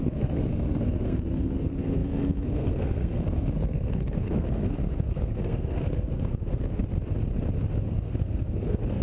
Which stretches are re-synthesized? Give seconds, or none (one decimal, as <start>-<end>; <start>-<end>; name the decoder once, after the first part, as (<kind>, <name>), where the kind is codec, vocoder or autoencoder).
0.0-6.8 (codec, SNAC); 7.9-9.0